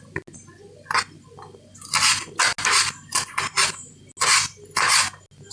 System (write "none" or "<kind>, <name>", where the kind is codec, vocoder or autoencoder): none